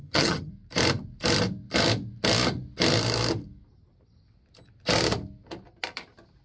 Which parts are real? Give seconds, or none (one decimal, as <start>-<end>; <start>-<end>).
0.5-6.4